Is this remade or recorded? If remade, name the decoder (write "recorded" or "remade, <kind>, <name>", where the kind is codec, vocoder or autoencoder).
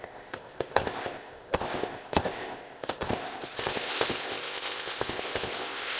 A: remade, codec, ZipCodec